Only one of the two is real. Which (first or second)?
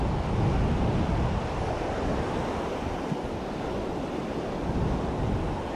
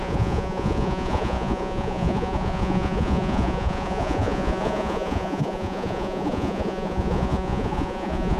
first